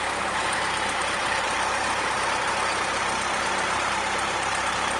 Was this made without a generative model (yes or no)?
no